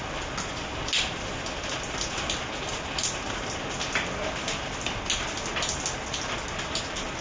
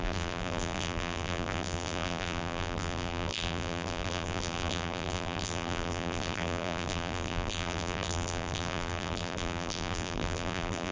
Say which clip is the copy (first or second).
second